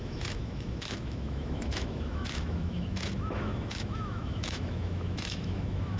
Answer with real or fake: fake